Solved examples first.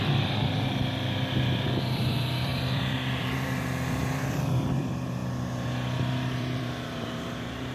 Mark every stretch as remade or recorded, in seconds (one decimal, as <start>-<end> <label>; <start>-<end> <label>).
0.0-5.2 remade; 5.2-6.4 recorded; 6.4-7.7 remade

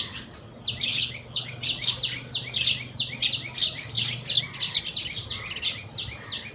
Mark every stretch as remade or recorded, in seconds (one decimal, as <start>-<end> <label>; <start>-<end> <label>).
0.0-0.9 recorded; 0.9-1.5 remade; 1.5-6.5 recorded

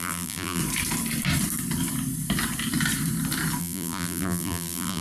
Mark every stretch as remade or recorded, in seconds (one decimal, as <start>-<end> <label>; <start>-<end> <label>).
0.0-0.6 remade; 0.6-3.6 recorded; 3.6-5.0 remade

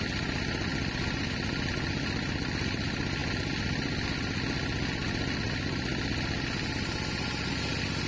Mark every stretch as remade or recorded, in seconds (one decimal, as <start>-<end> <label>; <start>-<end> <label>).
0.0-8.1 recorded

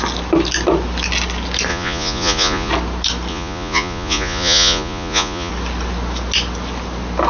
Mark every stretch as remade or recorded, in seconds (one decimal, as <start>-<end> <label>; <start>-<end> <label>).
0.0-1.7 recorded; 1.7-2.7 remade; 2.7-3.3 recorded; 3.3-5.5 remade; 5.5-7.3 recorded

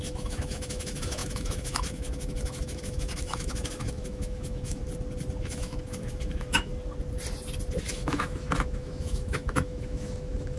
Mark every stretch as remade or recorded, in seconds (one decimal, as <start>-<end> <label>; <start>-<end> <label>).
0.0-4.8 remade; 4.8-5.4 recorded; 5.4-6.7 remade; 6.7-7.9 recorded; 7.9-10.6 remade

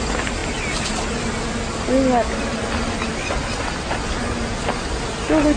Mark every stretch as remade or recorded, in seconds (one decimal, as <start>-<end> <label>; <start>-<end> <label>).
0.0-5.6 recorded